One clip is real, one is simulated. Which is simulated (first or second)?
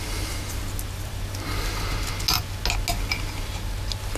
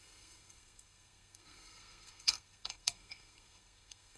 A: second